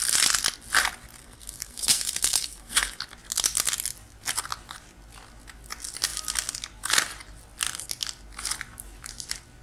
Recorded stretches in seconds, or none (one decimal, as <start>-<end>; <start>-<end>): 0.0-1.2; 3.0-9.6